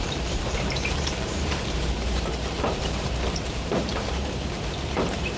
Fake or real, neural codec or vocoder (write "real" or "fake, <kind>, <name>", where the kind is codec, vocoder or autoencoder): fake, vocoder, BigVGAN v2